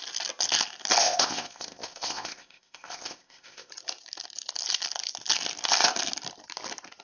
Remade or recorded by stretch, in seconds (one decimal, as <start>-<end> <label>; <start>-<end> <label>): 0.0-1.0 recorded; 1.0-3.7 remade; 3.7-7.0 recorded